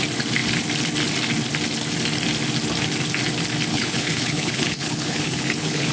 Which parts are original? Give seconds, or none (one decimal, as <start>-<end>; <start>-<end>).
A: 0.0-3.7